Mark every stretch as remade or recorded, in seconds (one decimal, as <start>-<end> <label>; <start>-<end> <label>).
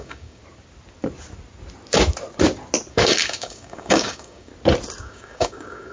0.0-0.4 remade; 0.4-2.9 recorded; 2.9-4.5 remade; 4.5-5.0 recorded; 5.0-5.9 remade